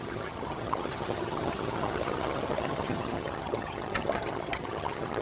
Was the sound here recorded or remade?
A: remade